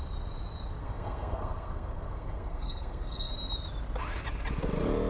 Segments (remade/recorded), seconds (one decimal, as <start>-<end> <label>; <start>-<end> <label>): 0.0-0.8 recorded; 0.8-3.3 remade; 3.3-5.1 recorded